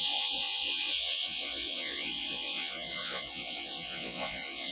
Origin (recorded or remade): remade